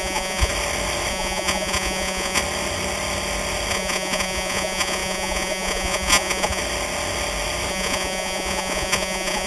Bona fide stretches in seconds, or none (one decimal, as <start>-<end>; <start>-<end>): 0.5-1.1; 2.4-3.7; 6.6-7.7